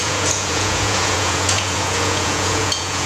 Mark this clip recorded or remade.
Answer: remade